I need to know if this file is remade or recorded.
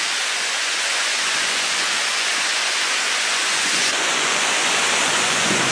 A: remade